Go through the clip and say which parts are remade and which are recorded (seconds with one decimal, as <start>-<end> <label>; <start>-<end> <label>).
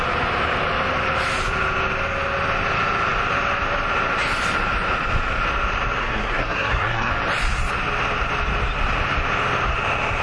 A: 0.0-6.0 recorded; 6.0-7.1 remade; 7.1-10.2 recorded